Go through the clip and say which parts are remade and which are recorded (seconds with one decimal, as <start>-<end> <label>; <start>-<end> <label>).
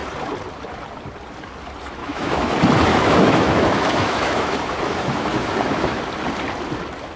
0.0-2.0 recorded; 2.0-2.5 remade; 2.5-2.9 recorded; 2.9-6.0 remade; 6.0-7.2 recorded